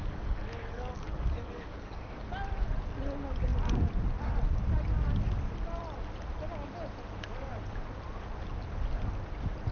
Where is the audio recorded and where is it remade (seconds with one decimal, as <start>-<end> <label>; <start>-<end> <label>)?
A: 0.0-2.3 remade; 2.3-9.7 recorded